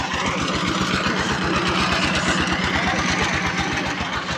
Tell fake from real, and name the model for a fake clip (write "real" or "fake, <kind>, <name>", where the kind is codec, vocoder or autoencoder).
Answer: real